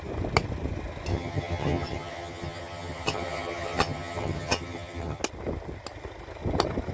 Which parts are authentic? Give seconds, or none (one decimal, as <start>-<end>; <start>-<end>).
0.0-1.1; 5.2-6.9